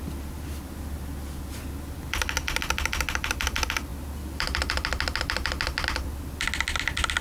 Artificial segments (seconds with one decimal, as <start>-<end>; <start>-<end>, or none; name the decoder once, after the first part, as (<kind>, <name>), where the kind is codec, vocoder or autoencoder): none